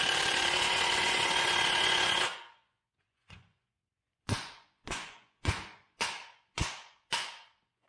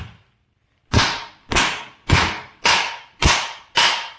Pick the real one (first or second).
second